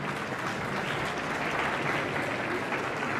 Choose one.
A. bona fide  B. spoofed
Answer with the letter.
A